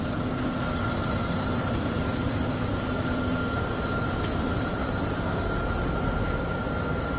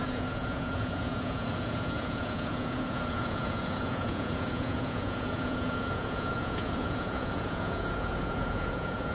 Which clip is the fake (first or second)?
second